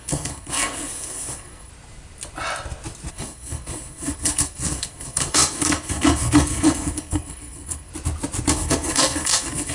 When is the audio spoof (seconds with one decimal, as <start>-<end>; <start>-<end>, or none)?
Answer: 0.0-1.7; 3.1-7.9; 8.5-9.7